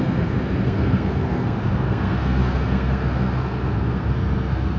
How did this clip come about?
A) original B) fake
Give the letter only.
B